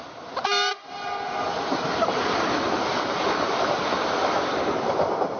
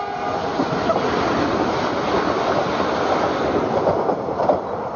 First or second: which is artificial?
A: first